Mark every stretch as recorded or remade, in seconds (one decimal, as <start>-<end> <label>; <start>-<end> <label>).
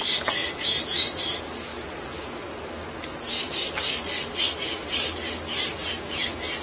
0.0-6.6 recorded